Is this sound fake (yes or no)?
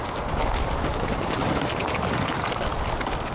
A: no